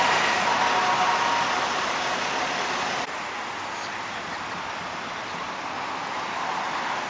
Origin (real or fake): real